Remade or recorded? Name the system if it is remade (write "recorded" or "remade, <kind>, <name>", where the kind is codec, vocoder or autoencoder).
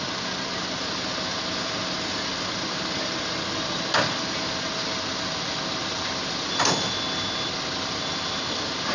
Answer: recorded